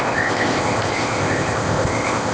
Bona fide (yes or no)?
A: no